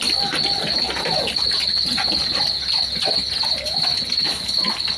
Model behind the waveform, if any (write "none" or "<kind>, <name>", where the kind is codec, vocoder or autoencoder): none